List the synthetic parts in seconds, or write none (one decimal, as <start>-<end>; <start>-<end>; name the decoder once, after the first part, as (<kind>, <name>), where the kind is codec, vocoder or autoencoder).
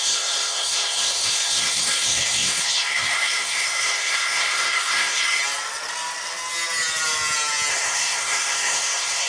0.0-5.4 (codec, SNAC); 7.7-9.3